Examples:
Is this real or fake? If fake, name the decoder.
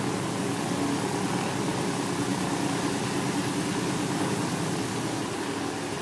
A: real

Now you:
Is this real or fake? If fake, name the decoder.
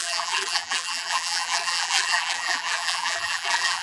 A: fake, vocoder, BigVGAN v2